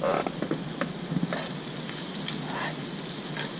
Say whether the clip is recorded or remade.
recorded